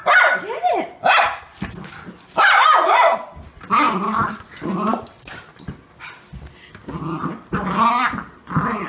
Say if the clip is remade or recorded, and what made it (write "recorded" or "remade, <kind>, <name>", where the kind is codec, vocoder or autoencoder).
recorded